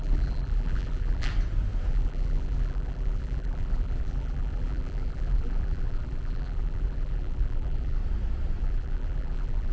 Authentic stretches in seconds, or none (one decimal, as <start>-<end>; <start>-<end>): 1.3-1.9; 8.0-8.6